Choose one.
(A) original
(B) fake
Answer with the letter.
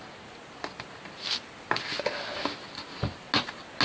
A